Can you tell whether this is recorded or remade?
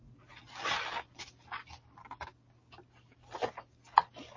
recorded